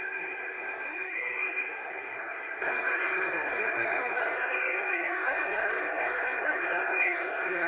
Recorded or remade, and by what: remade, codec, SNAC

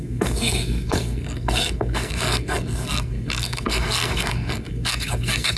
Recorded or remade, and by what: remade, codec, SNAC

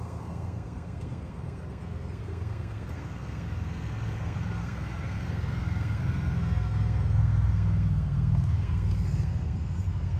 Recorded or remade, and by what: remade, codec, SNAC